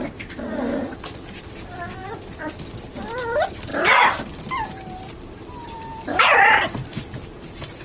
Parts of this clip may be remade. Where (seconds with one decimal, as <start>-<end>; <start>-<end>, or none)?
5.6-7.8